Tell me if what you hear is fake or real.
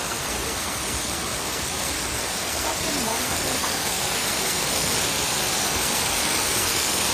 fake